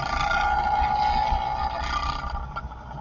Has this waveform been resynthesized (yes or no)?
no